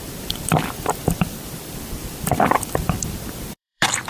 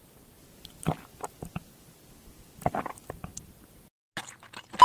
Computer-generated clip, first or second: first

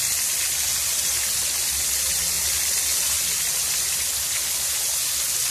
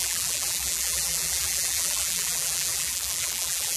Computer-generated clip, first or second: second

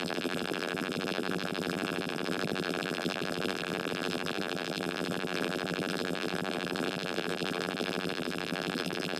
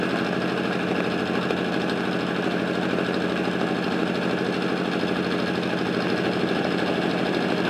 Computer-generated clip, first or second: first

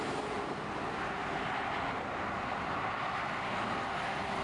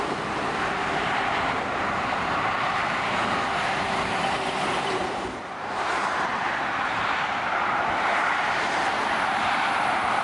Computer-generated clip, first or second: second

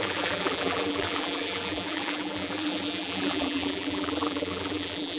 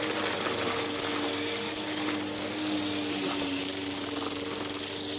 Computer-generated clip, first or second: first